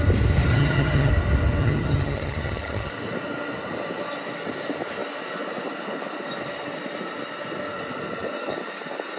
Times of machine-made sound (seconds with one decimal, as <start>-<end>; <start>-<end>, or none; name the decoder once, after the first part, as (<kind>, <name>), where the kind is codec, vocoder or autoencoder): 0.5-1.1 (vocoder, HiFi-GAN); 1.6-2.9